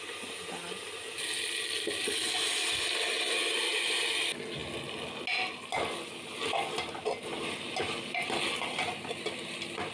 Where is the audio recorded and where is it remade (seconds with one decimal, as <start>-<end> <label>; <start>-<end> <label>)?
0.0-9.9 recorded